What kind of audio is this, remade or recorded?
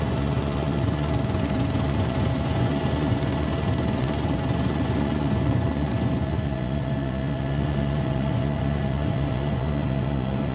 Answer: remade